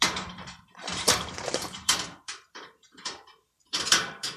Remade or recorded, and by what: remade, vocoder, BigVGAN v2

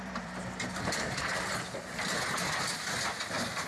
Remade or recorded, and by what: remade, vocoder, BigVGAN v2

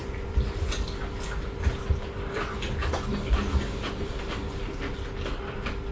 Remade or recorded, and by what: recorded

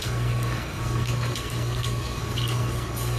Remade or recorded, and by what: remade, codec, SNAC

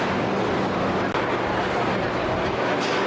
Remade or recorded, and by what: recorded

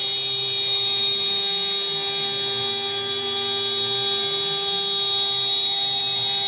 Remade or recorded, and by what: recorded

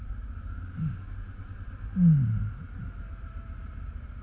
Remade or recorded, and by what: recorded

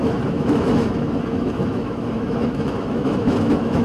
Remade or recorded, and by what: remade, autoencoder, DAC-VAE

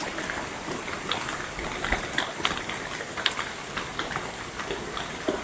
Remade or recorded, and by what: recorded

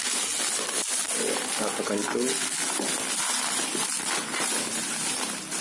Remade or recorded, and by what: recorded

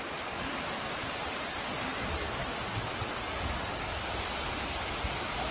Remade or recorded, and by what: recorded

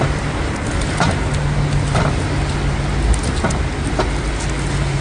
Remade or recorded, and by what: recorded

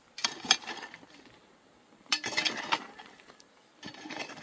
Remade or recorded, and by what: remade, vocoder, BigVGAN v2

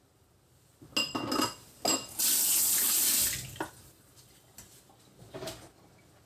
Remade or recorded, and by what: recorded